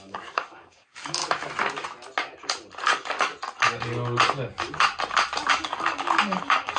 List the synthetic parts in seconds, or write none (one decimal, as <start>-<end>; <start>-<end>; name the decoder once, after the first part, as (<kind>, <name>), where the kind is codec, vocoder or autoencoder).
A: 0.0-1.2 (codec, DAC); 2.8-3.3; 5.5-6.8